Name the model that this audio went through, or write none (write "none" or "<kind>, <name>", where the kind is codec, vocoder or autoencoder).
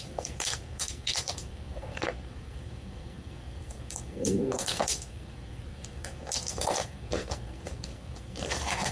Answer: codec, SNAC